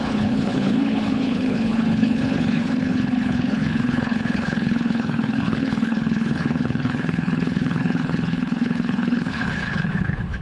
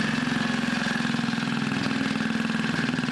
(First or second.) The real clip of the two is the second